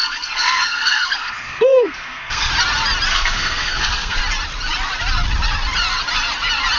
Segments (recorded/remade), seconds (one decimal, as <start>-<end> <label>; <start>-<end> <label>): 0.0-2.5 remade; 2.5-3.1 recorded; 3.1-4.2 remade; 4.2-6.8 recorded